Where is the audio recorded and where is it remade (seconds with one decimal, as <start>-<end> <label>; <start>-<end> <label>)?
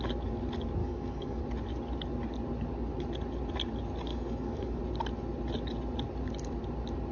0.0-0.8 recorded; 0.8-1.4 remade; 1.4-4.1 recorded; 4.1-4.8 remade; 4.8-7.1 recorded